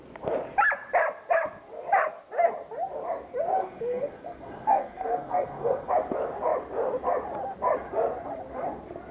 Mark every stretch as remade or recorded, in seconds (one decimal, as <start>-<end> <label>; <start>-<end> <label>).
0.0-3.6 recorded; 3.6-5.9 remade; 5.9-9.1 recorded